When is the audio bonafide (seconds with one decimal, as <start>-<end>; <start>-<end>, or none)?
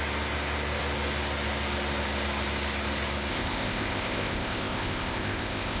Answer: 0.0-3.3